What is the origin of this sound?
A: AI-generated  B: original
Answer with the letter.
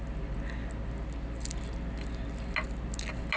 B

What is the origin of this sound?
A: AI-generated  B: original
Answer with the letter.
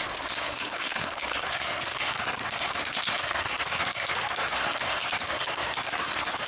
A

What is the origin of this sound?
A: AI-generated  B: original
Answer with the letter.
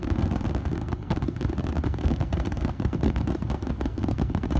A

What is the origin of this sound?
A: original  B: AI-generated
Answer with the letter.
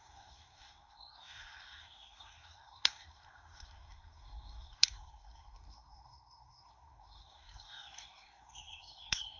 B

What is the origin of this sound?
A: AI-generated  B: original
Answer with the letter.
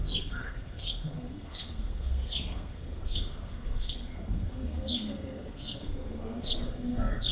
A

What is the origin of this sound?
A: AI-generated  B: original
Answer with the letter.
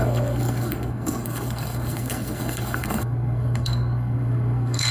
A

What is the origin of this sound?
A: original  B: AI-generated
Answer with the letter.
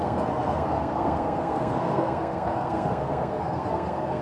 B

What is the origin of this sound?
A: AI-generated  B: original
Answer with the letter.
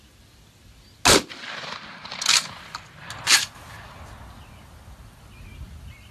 B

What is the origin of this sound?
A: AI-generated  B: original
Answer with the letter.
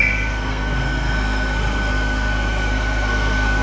A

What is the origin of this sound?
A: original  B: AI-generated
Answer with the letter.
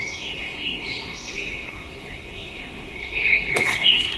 B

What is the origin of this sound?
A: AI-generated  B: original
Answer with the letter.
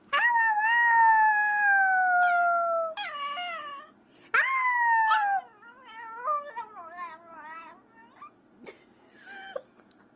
B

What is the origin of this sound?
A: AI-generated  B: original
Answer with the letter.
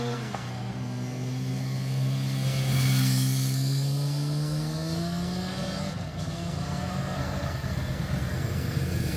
A